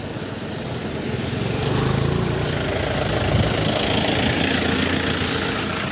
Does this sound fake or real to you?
real